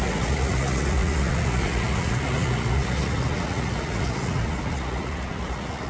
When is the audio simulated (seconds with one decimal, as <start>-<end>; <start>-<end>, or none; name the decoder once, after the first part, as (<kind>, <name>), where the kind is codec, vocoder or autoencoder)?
0.0-5.9 (vocoder, Vocos)